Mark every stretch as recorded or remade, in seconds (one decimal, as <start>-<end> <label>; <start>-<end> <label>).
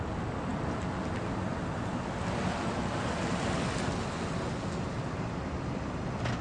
0.0-6.4 recorded